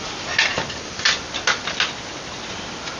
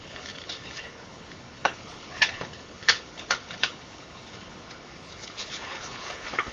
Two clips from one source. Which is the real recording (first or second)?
first